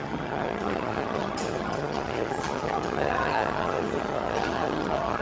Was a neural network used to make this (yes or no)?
yes